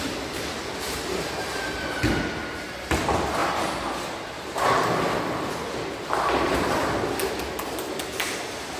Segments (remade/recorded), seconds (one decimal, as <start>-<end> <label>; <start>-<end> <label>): 0.0-8.8 recorded